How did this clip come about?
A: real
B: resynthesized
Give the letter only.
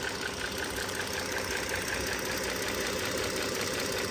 A